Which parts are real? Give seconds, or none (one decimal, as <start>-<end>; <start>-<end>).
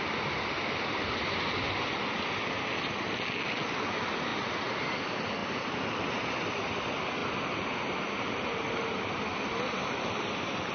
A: 0.0-10.7